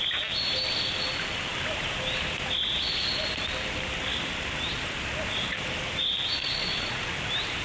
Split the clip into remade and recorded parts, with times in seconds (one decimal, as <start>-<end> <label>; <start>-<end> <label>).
0.0-6.4 recorded; 6.4-7.1 remade; 7.1-7.6 recorded